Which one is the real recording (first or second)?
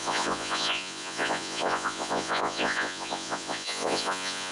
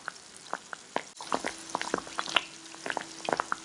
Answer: second